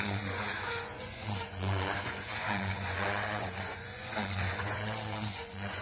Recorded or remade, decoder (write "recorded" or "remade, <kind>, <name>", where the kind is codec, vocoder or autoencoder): remade, vocoder, Vocos